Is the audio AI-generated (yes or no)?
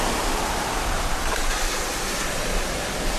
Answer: no